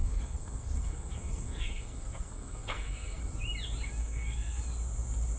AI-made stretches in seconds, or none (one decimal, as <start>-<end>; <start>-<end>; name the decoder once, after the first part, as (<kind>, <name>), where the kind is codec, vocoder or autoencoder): 0.0-3.2 (codec, SNAC); 4.0-4.6